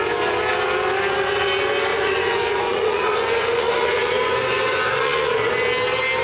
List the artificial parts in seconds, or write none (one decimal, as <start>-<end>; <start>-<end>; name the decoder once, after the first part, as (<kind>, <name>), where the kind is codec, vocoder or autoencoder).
1.9-5.5 (vocoder, Vocos)